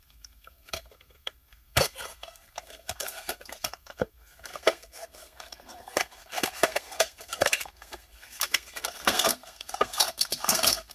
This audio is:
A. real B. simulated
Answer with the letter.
B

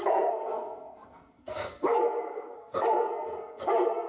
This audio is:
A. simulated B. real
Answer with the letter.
A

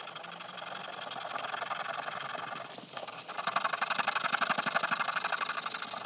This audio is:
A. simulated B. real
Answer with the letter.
B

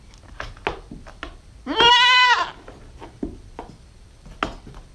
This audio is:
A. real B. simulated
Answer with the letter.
A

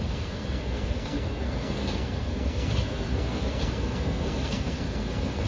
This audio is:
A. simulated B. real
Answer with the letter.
A